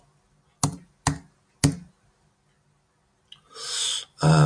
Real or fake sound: real